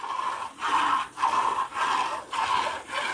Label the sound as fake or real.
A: real